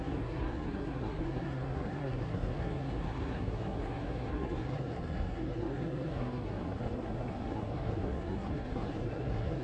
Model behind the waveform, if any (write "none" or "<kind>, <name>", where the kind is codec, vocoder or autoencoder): codec, SNAC